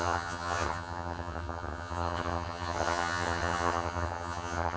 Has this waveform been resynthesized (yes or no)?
yes